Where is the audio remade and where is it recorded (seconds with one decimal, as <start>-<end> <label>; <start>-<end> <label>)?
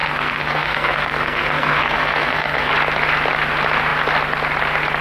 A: 0.0-2.7 remade; 2.7-5.0 recorded